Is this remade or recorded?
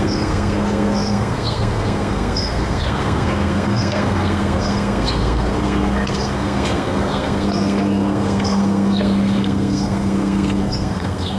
remade